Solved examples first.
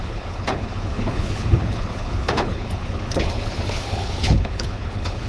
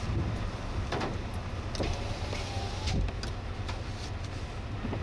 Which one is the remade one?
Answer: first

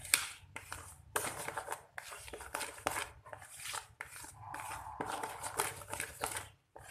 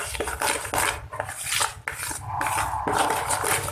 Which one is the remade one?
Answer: first